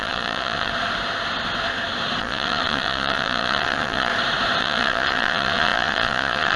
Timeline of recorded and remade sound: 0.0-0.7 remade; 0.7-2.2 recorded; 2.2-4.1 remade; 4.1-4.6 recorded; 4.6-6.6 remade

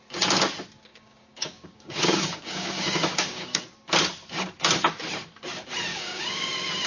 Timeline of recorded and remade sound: 0.0-0.9 recorded; 0.9-3.6 remade; 3.6-5.9 recorded; 5.9-6.5 remade; 6.5-6.9 recorded

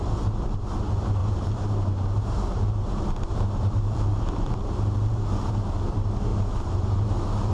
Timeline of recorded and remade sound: 0.0-1.2 recorded; 1.2-5.5 remade; 5.5-6.3 recorded; 6.3-7.5 remade

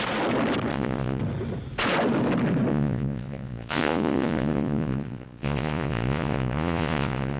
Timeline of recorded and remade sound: 0.0-0.7 recorded; 0.7-1.2 remade; 1.2-2.7 recorded; 2.7-7.4 remade

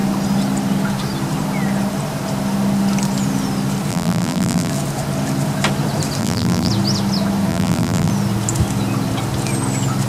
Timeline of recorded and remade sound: 0.0-3.9 recorded; 3.9-4.7 remade; 4.7-6.2 recorded; 6.2-6.7 remade; 6.7-7.5 recorded; 7.5-8.1 remade; 8.1-10.1 recorded

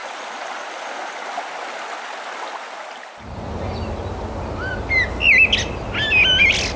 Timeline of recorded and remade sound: 0.0-6.8 recorded